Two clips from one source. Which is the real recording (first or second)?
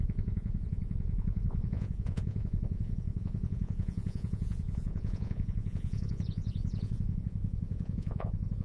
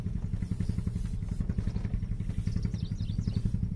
second